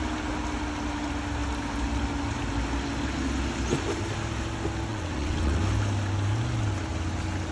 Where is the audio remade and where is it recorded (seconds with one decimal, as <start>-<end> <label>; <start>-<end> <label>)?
0.0-4.9 recorded; 4.9-5.6 remade; 5.6-7.5 recorded